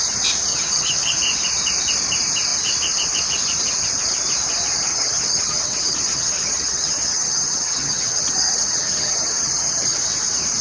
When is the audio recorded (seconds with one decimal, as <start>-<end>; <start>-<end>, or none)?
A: 0.0-0.5; 1.2-4.9; 10.0-10.6